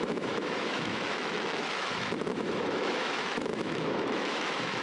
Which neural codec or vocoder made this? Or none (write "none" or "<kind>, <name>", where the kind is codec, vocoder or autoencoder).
autoencoder, DAC-VAE